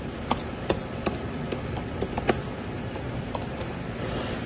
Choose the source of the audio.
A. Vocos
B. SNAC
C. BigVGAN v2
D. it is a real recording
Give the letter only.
C